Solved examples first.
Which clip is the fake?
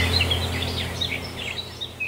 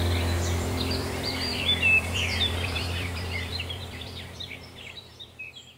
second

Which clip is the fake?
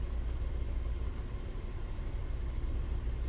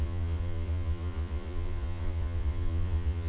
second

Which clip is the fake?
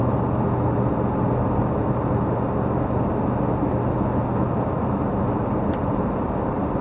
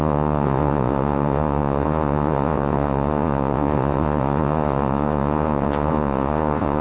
second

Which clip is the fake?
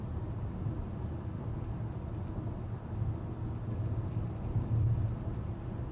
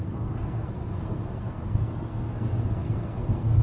second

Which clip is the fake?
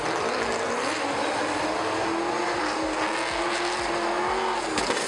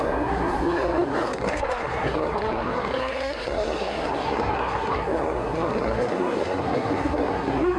second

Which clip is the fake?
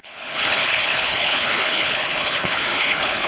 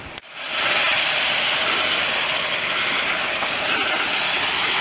first